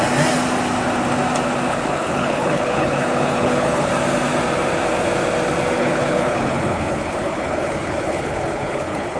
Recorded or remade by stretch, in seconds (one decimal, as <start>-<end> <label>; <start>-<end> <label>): 0.0-1.7 recorded; 1.7-3.9 remade; 3.9-5.8 recorded; 5.8-9.2 remade